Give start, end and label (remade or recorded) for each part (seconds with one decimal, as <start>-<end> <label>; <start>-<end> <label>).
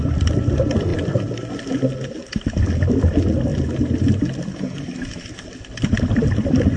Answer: 0.0-6.8 recorded